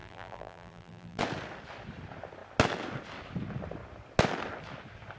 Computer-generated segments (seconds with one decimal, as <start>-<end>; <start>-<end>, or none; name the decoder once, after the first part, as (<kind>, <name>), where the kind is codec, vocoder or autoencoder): 0.0-1.2 (vocoder, BigVGAN v2)